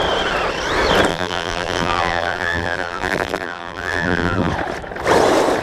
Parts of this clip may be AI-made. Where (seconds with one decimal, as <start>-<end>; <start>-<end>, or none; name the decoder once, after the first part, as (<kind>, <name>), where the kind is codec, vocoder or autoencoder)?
1.1-4.5 (vocoder, BigVGAN v2)